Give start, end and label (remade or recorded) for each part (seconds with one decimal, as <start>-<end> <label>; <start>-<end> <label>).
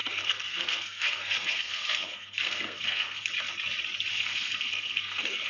0.0-3.3 remade; 3.3-4.1 recorded; 4.1-5.5 remade